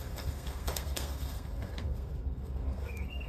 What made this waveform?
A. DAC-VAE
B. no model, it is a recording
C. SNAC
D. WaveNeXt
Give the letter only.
C